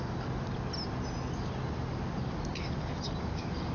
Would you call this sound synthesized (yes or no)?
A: no